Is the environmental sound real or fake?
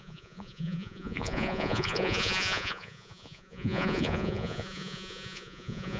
fake